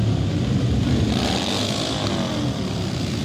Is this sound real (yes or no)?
yes